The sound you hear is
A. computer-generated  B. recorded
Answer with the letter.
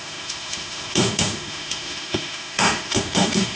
A